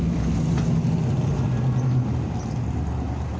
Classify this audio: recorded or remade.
recorded